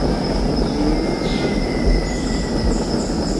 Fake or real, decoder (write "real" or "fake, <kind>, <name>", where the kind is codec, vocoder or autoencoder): real